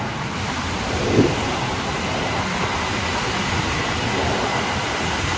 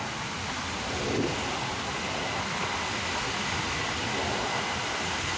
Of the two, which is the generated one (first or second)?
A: first